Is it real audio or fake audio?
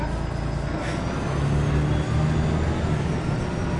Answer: real